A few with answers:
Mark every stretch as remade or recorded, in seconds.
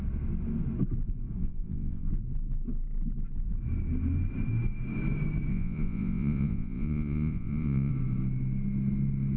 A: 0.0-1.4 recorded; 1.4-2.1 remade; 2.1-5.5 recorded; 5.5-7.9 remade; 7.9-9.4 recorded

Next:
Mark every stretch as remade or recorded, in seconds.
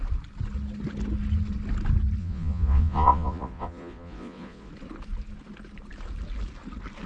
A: 0.0-2.2 recorded; 2.2-4.7 remade; 4.7-7.1 recorded